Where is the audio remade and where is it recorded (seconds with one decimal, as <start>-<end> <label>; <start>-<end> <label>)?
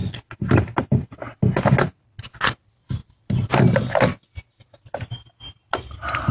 0.0-6.3 recorded